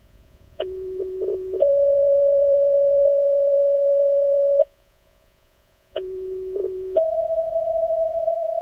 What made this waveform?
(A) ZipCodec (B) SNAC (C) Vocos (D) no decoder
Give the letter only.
C